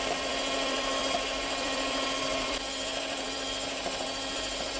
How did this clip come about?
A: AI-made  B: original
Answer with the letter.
A